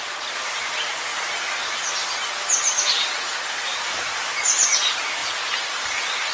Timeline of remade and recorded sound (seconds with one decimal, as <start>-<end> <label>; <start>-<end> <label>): 0.0-3.7 recorded; 3.7-4.2 remade; 4.2-6.3 recorded